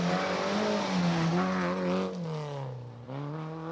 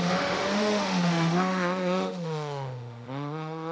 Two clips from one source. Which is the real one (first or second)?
first